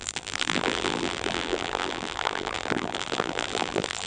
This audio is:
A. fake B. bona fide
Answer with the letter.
A